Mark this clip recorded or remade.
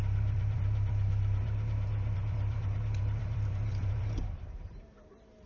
remade